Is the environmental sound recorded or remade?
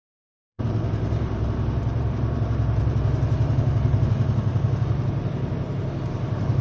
remade